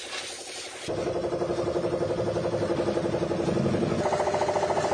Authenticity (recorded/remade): recorded